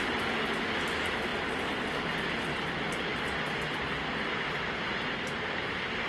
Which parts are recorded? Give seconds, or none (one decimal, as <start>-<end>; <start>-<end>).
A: 0.0-6.1